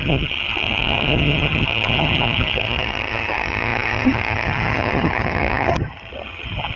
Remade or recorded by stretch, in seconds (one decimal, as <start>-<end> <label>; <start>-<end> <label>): 0.0-6.8 remade